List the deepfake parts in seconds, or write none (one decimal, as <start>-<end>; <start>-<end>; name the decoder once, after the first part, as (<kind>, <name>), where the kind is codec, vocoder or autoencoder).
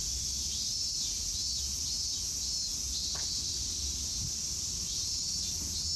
none